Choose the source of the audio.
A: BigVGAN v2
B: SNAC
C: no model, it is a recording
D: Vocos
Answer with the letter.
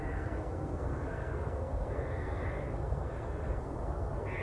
B